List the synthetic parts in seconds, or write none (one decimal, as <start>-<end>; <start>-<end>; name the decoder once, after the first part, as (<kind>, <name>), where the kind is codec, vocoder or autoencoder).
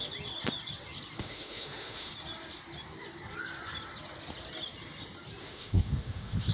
1.2-2.1 (autoencoder, DAC-VAE); 5.4-6.5